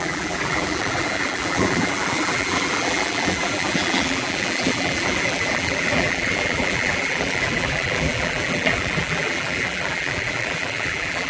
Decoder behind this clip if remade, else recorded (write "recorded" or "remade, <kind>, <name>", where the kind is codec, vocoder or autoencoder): remade, vocoder, BigVGAN v2